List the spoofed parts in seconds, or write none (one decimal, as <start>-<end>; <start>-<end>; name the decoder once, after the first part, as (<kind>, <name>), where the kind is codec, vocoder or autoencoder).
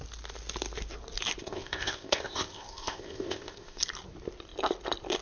1.4-3.8 (codec, ZipCodec)